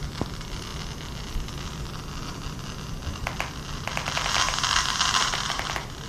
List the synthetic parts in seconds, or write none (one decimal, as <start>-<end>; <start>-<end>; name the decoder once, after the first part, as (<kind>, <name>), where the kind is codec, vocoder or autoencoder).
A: 5.2-6.1 (vocoder, BigVGAN v2)